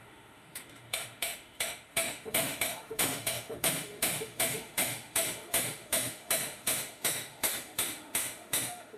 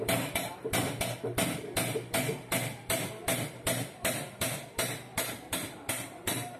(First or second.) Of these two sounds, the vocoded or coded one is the first